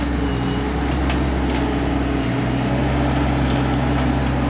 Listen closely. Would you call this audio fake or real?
real